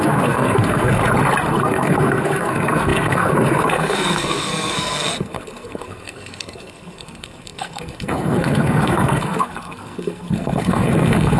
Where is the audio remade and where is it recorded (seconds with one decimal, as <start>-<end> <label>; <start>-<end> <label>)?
0.0-1.0 remade; 1.0-1.6 recorded; 1.6-11.4 remade